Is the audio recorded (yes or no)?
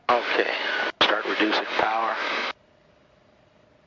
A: yes